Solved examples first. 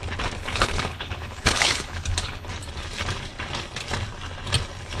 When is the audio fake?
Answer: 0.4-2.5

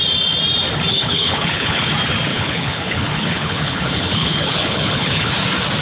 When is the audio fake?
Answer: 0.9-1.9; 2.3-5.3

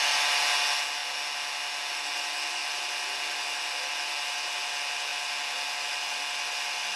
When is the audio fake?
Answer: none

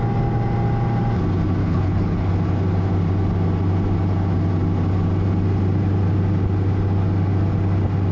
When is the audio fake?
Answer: 1.6-2.3

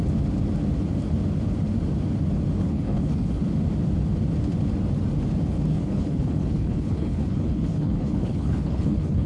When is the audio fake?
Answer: 2.6-3.4; 5.7-9.3

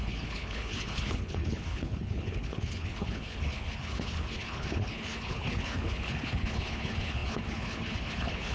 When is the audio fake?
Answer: 0.0-8.5

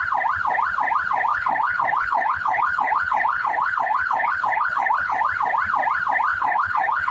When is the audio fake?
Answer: 1.3-5.2; 6.3-7.1